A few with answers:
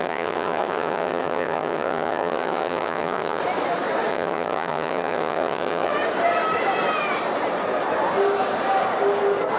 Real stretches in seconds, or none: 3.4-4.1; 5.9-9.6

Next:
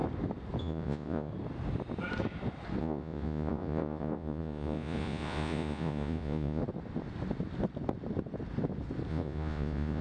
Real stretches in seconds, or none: 0.0-0.6; 1.3-2.8; 6.6-9.1

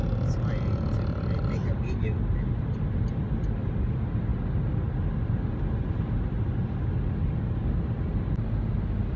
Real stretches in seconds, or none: 0.0-9.2

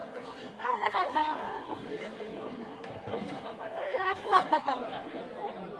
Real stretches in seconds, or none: 5.2-5.8

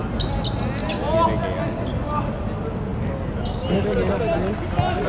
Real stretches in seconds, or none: 0.0-5.1

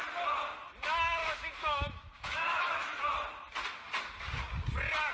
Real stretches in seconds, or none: 0.0-1.2; 3.0-5.1

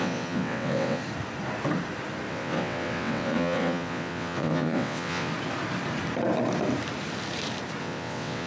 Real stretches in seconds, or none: 1.0-2.3; 5.3-7.8